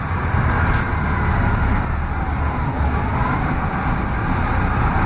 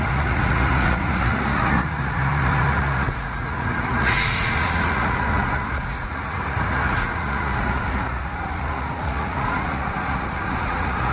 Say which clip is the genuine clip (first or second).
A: first